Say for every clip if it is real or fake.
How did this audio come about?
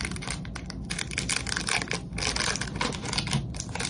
real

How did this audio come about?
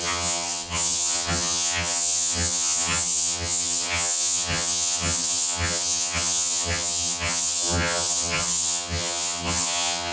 fake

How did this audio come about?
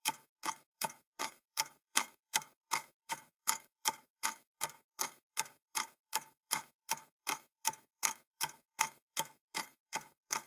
fake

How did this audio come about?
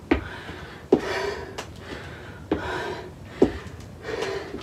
real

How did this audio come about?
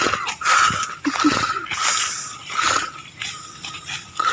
real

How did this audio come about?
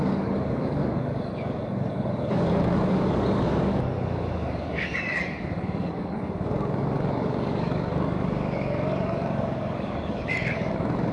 fake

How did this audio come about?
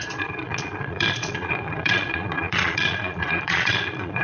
fake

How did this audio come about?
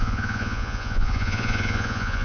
fake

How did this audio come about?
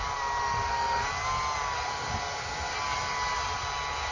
real